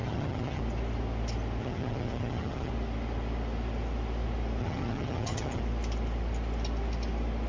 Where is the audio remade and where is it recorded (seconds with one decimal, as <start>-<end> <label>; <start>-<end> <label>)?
0.0-0.6 remade; 0.6-1.6 recorded; 1.6-2.7 remade; 2.7-4.6 recorded; 4.6-5.6 remade; 5.6-7.5 recorded

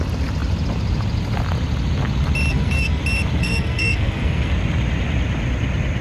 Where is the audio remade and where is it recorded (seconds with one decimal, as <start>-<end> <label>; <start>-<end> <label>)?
0.0-2.5 recorded; 2.5-3.0 remade; 3.0-3.4 recorded; 3.4-4.5 remade; 4.5-6.0 recorded